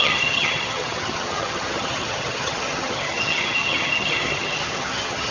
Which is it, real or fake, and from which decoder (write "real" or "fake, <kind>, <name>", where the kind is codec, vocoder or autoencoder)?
fake, vocoder, HiFi-GAN